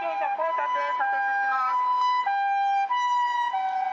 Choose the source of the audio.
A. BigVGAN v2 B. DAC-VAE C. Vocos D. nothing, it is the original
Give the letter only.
D